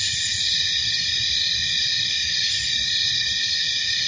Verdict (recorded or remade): recorded